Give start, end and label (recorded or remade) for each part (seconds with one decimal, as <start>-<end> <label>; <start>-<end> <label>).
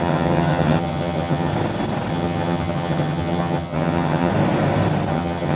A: 0.0-1.5 remade; 1.5-2.1 recorded; 2.1-4.3 remade; 4.3-5.1 recorded; 5.1-5.6 remade